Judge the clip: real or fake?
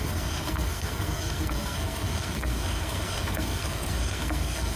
fake